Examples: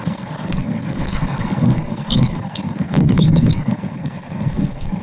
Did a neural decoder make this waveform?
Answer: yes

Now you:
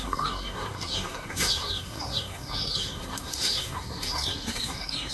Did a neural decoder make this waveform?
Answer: yes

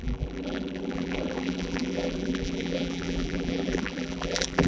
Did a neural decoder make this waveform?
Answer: yes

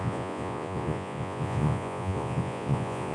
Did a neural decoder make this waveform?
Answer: yes